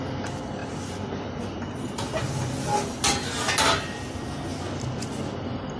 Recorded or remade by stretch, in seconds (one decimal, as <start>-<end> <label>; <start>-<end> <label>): 0.0-5.8 recorded